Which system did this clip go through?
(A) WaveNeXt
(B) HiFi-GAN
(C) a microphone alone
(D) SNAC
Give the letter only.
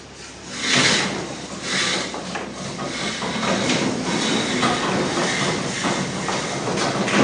C